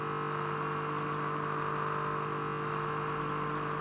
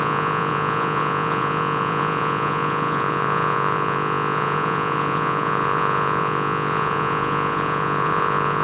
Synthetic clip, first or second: second